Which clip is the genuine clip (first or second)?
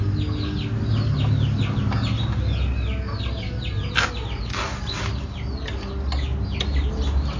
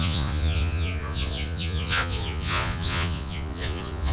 first